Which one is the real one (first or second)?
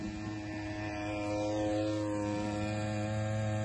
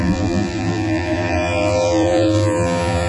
first